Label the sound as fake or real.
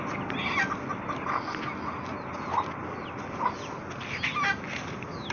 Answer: real